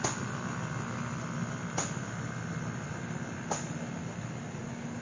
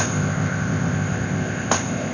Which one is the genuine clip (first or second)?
first